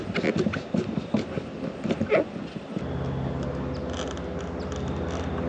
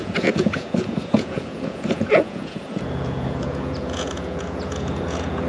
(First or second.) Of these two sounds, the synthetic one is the second